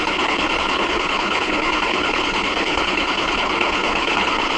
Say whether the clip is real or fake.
fake